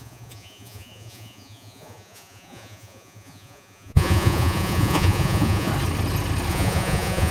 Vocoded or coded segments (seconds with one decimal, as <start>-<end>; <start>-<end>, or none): 0.0-5.7; 6.5-7.3